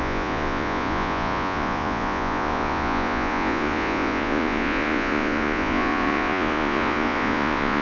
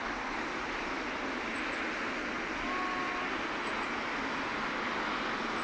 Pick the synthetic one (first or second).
first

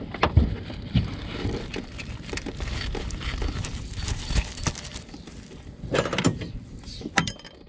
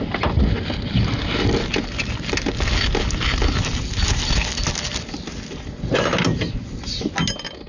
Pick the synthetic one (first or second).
first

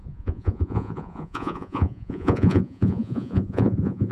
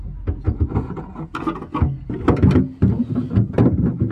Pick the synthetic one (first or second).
first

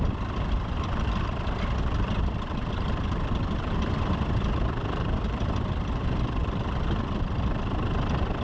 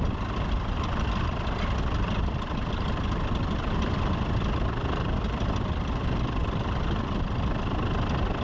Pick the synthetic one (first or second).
first